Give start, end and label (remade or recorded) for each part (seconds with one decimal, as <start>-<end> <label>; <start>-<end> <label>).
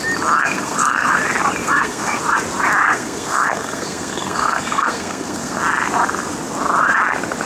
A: 0.0-0.4 recorded; 0.4-1.2 remade; 1.2-1.6 recorded; 1.6-2.2 remade; 2.2-2.9 recorded; 2.9-5.6 remade; 5.6-7.5 recorded